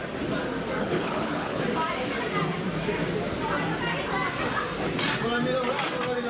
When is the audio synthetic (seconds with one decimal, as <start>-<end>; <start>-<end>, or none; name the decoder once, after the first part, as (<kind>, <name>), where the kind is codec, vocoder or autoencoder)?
0.8-1.6 (codec, HILCodec)